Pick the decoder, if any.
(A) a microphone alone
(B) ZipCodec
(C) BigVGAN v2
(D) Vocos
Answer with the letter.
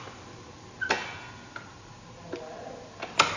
A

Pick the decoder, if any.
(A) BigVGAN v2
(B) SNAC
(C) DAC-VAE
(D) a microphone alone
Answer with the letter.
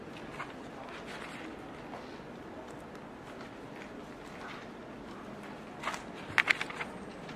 D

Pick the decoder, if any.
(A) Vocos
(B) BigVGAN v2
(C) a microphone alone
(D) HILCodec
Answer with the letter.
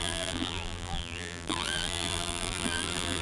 B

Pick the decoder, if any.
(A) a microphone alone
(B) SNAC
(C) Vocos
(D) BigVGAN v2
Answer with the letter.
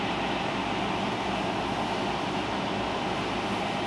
A